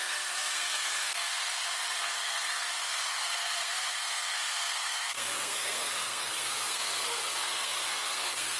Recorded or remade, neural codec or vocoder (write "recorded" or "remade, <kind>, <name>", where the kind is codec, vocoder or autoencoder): remade, codec, SNAC